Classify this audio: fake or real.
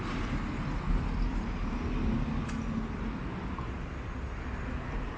real